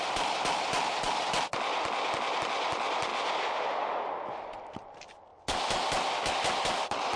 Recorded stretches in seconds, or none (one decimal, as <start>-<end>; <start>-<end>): 0.0-7.2